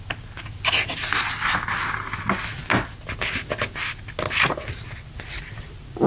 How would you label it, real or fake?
real